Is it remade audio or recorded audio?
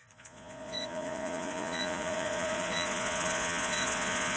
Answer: remade